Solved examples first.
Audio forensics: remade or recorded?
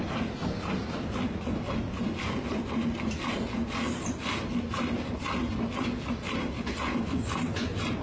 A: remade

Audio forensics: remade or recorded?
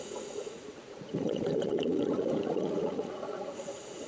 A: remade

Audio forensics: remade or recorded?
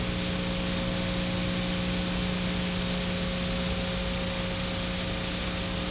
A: recorded